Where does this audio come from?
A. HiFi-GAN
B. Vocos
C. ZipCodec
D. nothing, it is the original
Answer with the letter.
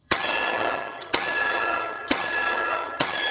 A